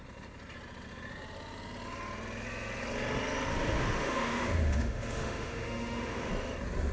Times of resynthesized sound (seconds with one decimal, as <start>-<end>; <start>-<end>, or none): 3.5-6.3